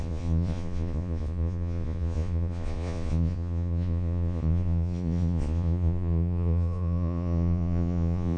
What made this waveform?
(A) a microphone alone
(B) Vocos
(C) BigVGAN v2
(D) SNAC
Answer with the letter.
B